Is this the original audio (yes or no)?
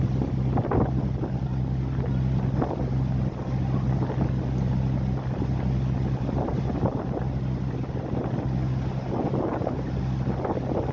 yes